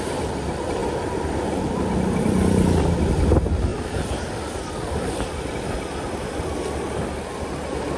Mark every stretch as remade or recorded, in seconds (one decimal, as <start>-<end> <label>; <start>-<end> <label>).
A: 0.0-0.8 recorded; 0.8-1.4 remade; 1.4-8.0 recorded